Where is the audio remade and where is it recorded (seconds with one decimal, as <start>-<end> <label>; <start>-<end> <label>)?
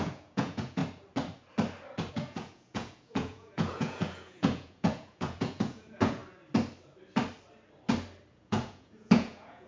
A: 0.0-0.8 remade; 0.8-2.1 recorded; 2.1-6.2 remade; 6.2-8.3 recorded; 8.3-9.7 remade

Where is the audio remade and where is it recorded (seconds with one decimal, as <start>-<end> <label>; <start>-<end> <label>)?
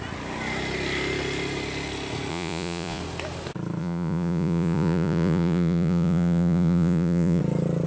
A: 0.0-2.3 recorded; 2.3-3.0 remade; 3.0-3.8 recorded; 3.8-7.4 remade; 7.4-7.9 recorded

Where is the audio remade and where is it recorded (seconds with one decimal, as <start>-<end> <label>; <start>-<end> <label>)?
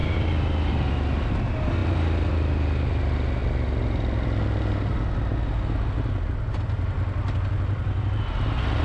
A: 0.0-8.8 recorded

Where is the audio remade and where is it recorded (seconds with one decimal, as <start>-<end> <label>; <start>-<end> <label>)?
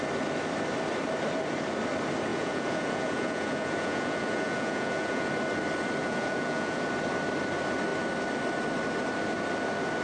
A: 0.0-2.3 recorded; 2.3-5.3 remade; 5.3-6.0 recorded; 6.0-6.9 remade; 6.9-10.0 recorded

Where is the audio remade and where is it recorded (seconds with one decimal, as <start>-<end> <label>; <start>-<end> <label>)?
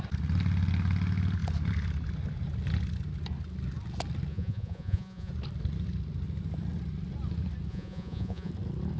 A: 0.0-4.3 recorded; 4.3-5.3 remade; 5.3-7.7 recorded; 7.7-8.5 remade; 8.5-9.0 recorded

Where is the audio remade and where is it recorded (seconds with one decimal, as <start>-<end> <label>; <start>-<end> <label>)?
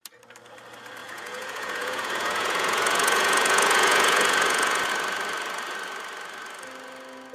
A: 0.0-1.0 recorded; 1.0-4.9 remade; 4.9-7.3 recorded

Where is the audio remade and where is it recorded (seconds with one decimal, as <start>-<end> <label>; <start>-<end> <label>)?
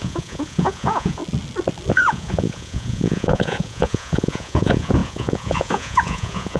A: 0.0-1.2 remade; 1.2-1.9 recorded; 1.9-6.6 remade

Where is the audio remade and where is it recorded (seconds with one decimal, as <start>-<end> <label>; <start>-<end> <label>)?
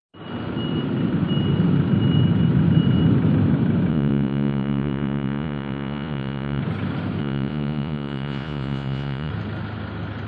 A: 0.0-3.9 recorded; 3.9-6.6 remade; 6.6-7.2 recorded; 7.2-9.3 remade; 9.3-10.3 recorded